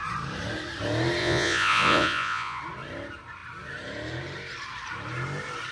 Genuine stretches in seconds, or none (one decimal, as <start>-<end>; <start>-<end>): 0.0-1.2; 2.6-5.7